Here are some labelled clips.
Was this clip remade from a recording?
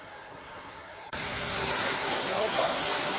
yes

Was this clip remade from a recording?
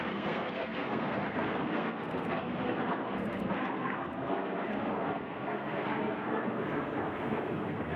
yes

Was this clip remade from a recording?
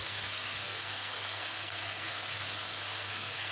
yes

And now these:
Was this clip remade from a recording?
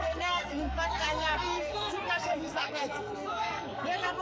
yes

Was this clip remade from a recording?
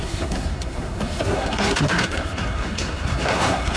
yes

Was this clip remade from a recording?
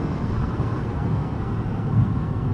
yes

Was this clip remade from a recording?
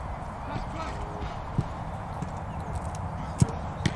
no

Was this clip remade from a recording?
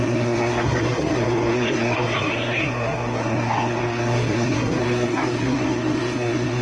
yes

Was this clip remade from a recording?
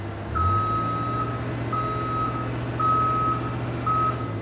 no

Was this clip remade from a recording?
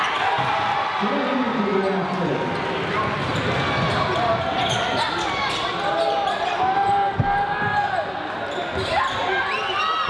no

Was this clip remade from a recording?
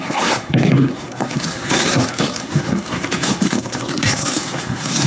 yes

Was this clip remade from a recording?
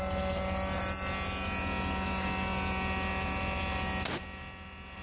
no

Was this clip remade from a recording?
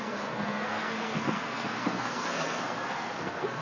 yes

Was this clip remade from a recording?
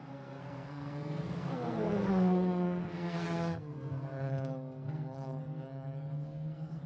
yes